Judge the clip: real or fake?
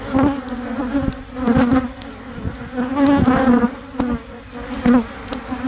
real